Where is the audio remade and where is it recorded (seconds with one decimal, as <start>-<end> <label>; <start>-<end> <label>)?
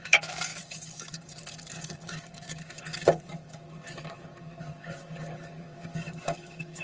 0.0-6.8 remade